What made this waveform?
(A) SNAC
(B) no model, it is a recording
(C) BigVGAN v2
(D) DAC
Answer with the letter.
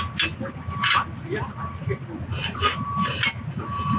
B